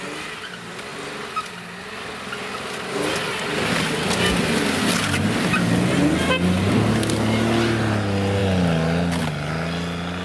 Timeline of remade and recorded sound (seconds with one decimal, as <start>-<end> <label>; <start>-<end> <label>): 0.0-10.2 recorded

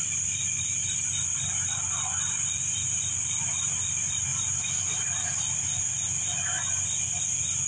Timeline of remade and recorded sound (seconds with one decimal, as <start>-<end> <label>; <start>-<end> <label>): 0.0-7.7 recorded

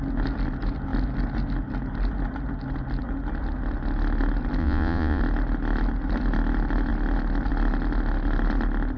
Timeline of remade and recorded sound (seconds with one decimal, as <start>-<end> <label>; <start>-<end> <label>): 0.0-4.6 recorded; 4.6-5.2 remade; 5.2-9.0 recorded

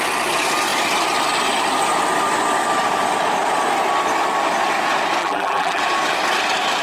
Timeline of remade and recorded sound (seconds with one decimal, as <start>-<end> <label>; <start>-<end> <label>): 0.0-5.2 recorded; 5.2-5.8 remade; 5.8-6.8 recorded

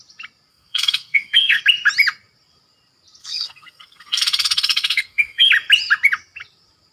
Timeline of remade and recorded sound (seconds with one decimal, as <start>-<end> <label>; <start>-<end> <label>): 0.0-0.5 recorded; 0.5-1.6 remade; 1.6-3.2 recorded; 3.2-5.5 remade; 5.5-6.9 recorded

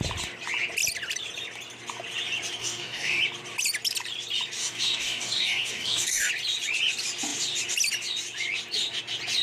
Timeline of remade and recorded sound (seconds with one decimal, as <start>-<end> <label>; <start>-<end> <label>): 0.0-2.6 recorded; 2.6-3.2 remade; 3.2-4.6 recorded; 4.6-6.3 remade; 6.3-9.4 recorded

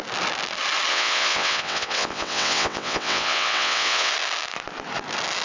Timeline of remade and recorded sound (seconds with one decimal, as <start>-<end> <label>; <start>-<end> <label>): 0.0-0.9 recorded; 0.9-4.1 remade; 4.1-5.4 recorded

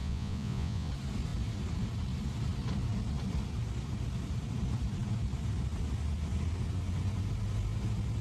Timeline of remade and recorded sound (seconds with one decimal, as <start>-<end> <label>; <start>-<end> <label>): 0.0-0.9 remade; 0.9-8.2 recorded